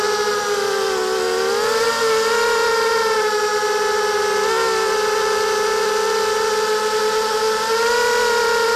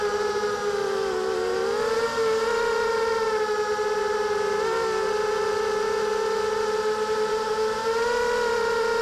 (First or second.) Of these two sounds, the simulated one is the second